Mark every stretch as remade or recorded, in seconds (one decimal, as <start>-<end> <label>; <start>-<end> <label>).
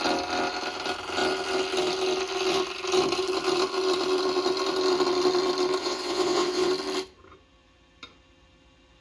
0.0-5.8 recorded; 5.8-6.7 remade; 6.7-9.0 recorded